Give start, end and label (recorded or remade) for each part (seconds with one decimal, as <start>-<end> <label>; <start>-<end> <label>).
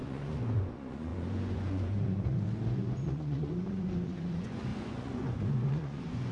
0.0-6.3 remade